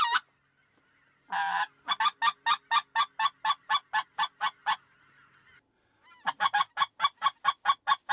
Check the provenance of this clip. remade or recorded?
recorded